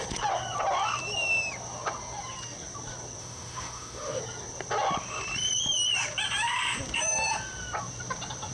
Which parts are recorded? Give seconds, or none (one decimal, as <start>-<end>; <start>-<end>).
0.0-3.2; 4.2-8.5